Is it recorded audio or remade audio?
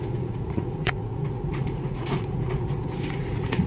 remade